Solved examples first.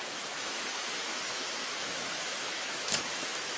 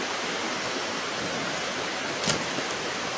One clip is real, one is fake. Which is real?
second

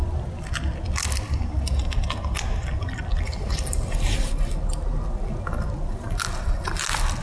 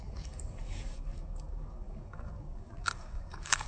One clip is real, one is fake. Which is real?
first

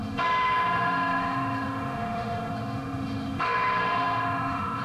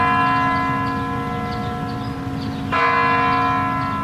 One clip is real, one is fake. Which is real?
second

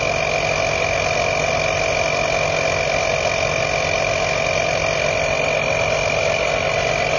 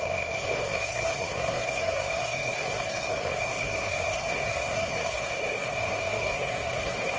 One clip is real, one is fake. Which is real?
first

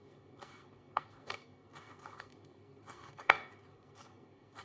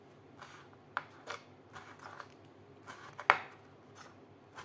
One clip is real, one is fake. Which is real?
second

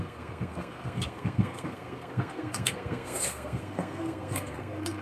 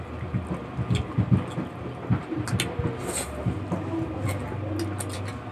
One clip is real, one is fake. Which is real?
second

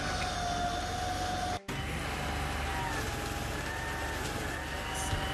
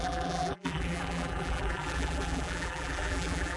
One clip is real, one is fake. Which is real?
first